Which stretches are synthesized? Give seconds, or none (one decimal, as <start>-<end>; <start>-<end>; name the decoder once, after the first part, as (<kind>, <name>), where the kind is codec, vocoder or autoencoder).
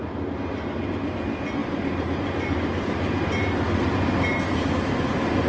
none